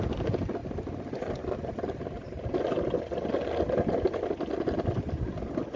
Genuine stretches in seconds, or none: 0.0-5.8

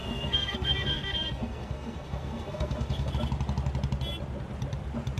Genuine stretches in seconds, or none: 3.1-5.2

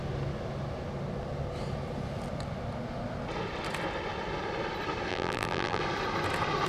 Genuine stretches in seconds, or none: 0.0-5.1; 5.8-6.7